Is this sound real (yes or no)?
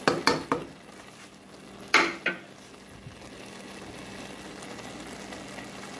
yes